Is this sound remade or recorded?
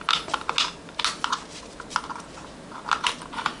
recorded